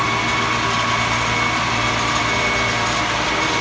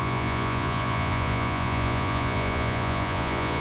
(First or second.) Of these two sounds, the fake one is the second